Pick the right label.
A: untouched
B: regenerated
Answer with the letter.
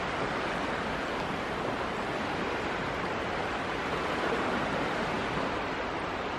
A